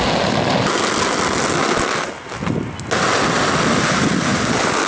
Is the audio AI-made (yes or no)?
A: no